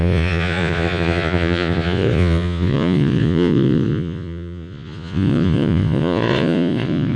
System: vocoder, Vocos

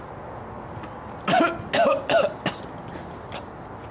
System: none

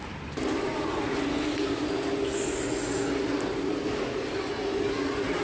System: none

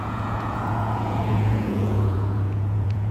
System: vocoder, Vocos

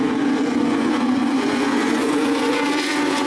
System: vocoder, Vocos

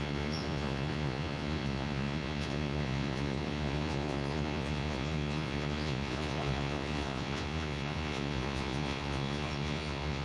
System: vocoder, Vocos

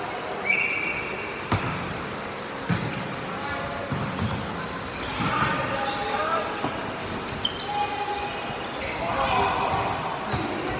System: none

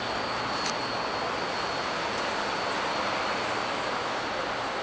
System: none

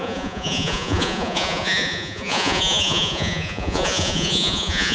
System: vocoder, Vocos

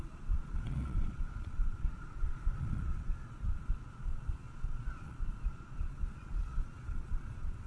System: vocoder, Vocos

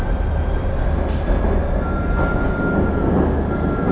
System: none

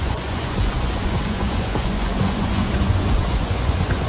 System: vocoder, Vocos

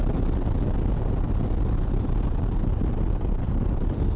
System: none